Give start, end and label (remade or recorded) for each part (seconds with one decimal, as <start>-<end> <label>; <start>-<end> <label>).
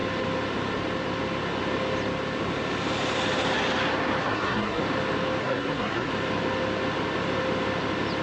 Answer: 0.0-4.2 recorded; 4.2-4.8 remade; 4.8-5.4 recorded; 5.4-6.1 remade; 6.1-8.2 recorded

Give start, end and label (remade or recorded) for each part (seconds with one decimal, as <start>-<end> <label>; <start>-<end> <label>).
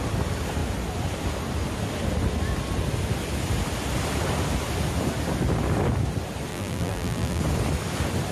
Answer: 0.0-6.5 recorded; 6.5-7.4 remade; 7.4-8.3 recorded